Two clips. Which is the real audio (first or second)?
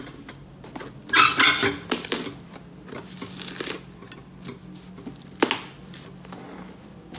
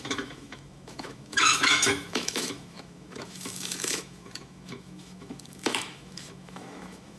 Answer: first